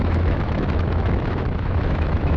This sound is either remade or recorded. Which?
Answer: remade